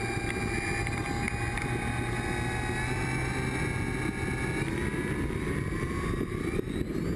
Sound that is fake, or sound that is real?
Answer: real